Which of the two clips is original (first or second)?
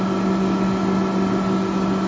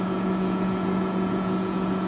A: first